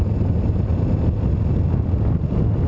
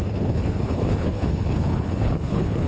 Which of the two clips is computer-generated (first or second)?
second